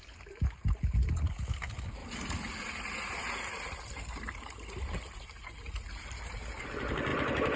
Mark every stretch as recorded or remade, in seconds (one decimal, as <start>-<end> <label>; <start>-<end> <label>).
0.0-7.6 recorded